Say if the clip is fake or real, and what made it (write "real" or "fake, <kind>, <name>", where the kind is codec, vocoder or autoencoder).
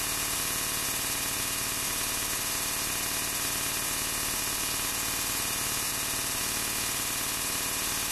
real